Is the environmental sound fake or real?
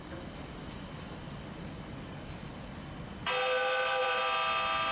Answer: real